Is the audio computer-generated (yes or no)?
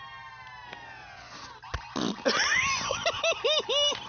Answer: no